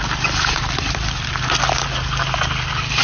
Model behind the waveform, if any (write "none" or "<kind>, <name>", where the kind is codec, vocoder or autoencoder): none